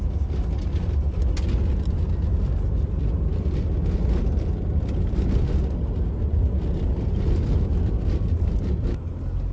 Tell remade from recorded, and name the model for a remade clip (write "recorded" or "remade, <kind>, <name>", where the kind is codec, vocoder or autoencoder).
recorded